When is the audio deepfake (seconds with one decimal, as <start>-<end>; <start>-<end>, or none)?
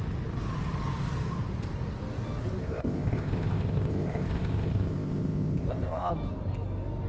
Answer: 2.6-6.1